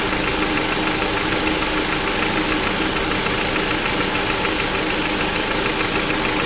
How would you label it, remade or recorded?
recorded